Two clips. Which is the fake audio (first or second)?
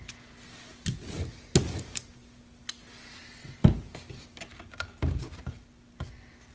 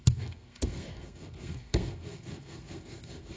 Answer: second